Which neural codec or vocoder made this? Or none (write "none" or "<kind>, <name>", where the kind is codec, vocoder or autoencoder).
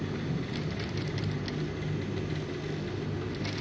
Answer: none